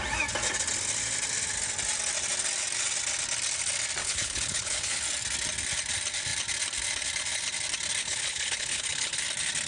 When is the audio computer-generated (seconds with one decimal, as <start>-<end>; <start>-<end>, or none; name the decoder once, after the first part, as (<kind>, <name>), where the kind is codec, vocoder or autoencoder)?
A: 4.0-5.0 (codec, HILCodec); 8.0-9.2